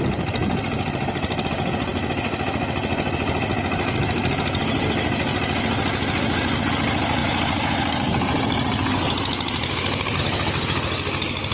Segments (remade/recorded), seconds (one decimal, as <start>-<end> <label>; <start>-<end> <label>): 0.0-0.4 recorded; 0.4-1.5 remade; 1.5-7.2 recorded; 7.2-10.2 remade; 10.2-11.5 recorded